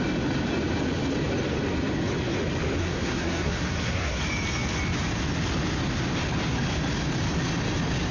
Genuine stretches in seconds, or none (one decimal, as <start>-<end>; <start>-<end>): 0.0-2.8; 4.2-8.1